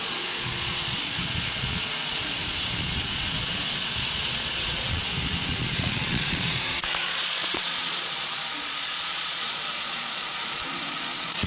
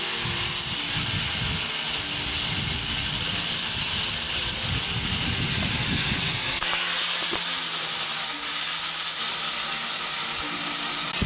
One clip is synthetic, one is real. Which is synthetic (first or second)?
first